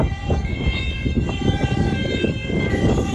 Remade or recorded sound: remade